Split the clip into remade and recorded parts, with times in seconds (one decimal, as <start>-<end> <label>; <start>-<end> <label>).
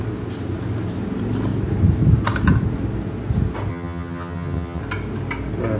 0.0-3.7 recorded; 3.7-4.8 remade; 4.8-5.8 recorded